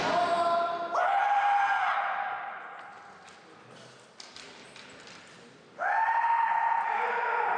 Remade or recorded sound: recorded